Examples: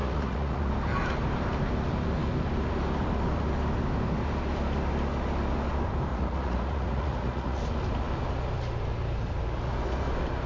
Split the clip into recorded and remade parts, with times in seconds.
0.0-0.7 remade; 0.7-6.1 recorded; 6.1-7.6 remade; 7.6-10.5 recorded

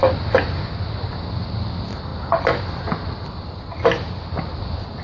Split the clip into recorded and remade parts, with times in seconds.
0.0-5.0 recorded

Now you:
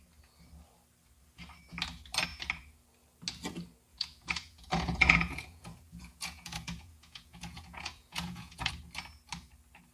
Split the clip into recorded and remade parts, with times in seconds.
0.0-3.9 recorded; 3.9-8.7 remade; 8.7-9.9 recorded